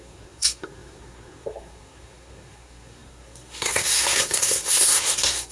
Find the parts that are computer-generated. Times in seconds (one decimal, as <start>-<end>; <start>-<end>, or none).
0.0-5.5